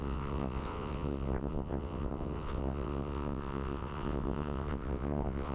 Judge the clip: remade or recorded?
remade